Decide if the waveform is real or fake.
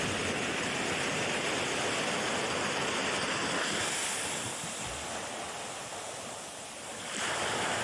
real